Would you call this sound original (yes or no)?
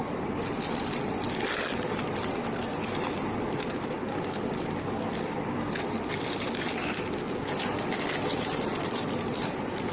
yes